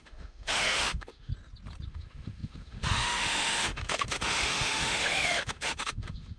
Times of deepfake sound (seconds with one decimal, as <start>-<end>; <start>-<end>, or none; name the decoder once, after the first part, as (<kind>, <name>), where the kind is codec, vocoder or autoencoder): 0.0-1.3 (autoencoder, DAC-VAE); 1.9-6.4